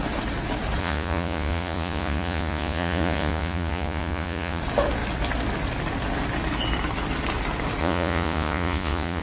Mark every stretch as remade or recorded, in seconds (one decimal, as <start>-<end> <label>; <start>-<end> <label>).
0.0-0.8 recorded; 0.8-4.6 remade; 4.6-7.8 recorded; 7.8-9.2 remade